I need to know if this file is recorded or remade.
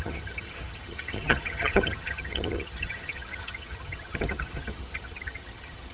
remade